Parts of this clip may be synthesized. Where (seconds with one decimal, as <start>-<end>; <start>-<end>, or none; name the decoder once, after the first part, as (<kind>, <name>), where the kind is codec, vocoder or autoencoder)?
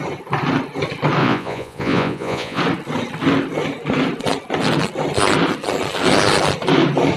1.2-2.6 (vocoder, Vocos)